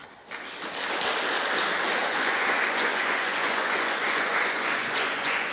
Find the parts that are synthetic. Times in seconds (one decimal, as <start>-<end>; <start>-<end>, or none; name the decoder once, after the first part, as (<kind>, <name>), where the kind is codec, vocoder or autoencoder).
2.0-5.5 (vocoder, Vocos)